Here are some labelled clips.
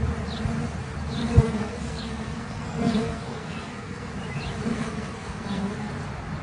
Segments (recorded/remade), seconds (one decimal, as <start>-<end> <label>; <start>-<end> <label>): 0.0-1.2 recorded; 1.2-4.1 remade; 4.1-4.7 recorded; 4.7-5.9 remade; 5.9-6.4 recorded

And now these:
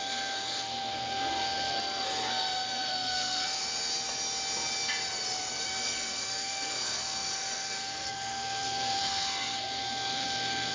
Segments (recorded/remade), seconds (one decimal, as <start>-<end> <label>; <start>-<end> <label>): 0.0-3.6 remade; 3.6-5.6 recorded; 5.6-10.7 remade

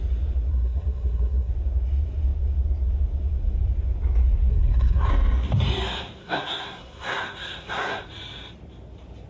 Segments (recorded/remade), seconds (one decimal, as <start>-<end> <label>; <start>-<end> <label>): 0.0-0.5 recorded; 0.5-1.5 remade; 1.5-4.5 recorded; 4.5-5.1 remade; 5.1-6.2 recorded; 6.2-8.0 remade; 8.0-9.3 recorded

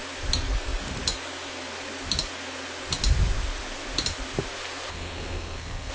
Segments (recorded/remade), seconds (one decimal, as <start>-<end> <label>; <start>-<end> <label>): 0.0-4.9 recorded; 4.9-5.9 remade

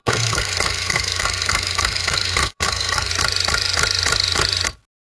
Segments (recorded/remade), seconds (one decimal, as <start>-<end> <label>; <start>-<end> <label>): 0.0-3.1 remade; 3.1-5.1 recorded

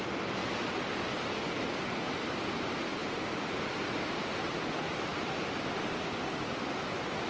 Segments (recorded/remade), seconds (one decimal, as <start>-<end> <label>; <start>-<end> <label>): 0.0-7.3 recorded

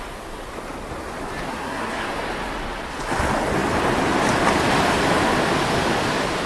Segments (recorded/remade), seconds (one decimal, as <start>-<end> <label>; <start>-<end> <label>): 0.0-1.5 recorded; 1.5-2.1 remade; 2.1-6.5 recorded